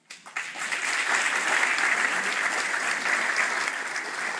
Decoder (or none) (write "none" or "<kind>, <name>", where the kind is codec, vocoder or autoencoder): none